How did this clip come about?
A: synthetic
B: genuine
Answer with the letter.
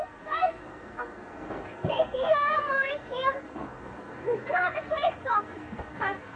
A